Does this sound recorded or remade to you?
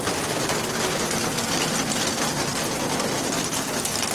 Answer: recorded